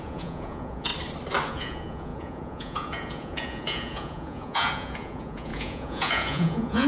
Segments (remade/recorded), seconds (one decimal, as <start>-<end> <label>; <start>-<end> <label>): 0.0-0.9 remade; 0.9-1.5 recorded; 1.5-6.9 remade